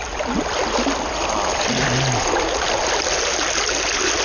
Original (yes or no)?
yes